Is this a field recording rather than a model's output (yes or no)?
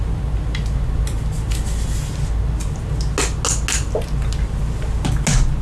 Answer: yes